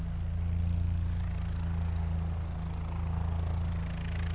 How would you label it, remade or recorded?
recorded